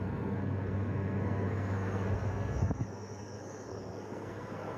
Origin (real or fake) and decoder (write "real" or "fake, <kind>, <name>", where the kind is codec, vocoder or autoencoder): fake, codec, SNAC